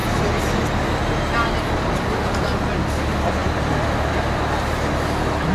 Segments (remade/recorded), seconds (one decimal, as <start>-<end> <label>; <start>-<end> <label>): 0.0-5.5 recorded